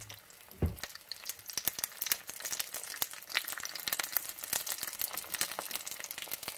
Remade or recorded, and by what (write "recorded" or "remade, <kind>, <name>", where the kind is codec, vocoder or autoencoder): recorded